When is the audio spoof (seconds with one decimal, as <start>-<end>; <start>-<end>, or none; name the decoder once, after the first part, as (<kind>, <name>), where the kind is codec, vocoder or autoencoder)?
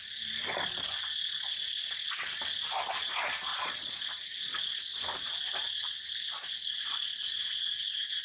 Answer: 3.5-4.0 (vocoder, Vocos)